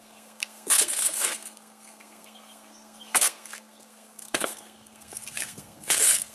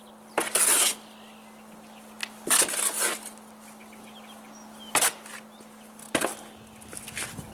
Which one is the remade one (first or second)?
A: first